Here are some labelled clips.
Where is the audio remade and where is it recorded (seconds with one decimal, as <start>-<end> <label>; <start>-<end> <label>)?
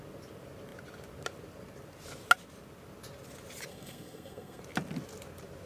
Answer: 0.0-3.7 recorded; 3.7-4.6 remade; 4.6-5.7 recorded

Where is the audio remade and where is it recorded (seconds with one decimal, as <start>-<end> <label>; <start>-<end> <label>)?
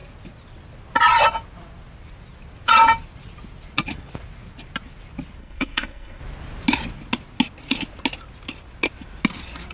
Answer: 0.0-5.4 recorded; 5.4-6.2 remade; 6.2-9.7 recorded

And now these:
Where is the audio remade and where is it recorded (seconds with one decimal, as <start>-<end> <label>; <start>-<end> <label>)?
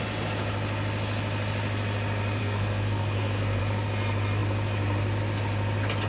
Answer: 0.0-2.4 recorded; 2.4-3.6 remade; 3.6-6.1 recorded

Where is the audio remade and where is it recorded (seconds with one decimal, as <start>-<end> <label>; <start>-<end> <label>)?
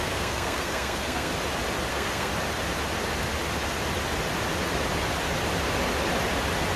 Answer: 0.0-1.3 remade; 1.3-1.9 recorded; 1.9-2.3 remade; 2.3-6.8 recorded